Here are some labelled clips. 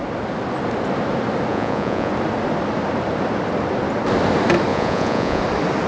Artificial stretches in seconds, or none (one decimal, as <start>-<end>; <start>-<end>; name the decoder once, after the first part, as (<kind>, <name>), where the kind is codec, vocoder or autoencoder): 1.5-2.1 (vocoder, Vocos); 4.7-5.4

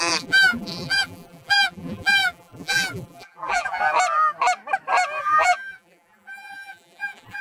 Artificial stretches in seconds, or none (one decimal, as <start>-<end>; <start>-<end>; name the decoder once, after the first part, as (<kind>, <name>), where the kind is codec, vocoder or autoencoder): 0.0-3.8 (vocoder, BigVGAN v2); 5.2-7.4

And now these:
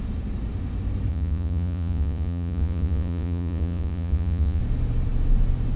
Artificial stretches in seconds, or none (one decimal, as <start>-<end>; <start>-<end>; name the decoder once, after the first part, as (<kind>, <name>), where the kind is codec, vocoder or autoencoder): 1.1-4.6 (vocoder, Vocos)

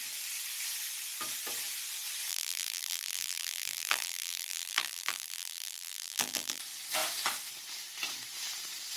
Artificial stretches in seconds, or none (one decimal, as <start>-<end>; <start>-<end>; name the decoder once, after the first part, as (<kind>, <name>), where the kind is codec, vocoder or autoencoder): 2.3-6.6 (vocoder, BigVGAN v2)